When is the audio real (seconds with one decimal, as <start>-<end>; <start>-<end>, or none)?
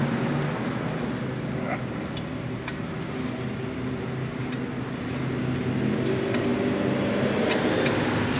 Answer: 0.0-8.4